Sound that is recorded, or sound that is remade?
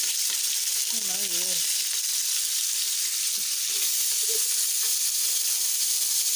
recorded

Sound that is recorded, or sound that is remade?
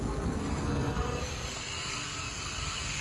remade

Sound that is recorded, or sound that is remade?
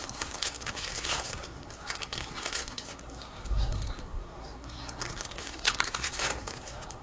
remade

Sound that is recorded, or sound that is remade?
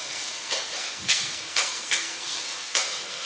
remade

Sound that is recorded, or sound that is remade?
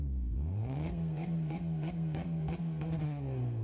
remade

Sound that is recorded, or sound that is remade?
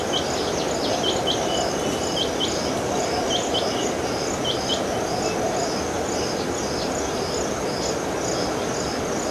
recorded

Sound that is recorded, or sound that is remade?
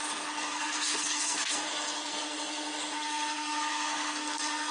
remade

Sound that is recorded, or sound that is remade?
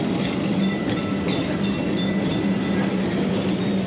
recorded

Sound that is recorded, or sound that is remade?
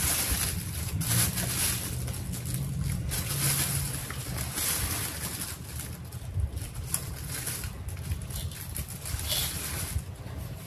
recorded